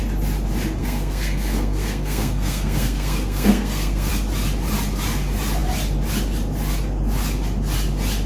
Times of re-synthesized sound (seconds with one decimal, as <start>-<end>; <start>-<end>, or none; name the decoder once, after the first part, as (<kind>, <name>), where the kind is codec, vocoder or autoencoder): 0.8-4.1 (codec, SNAC)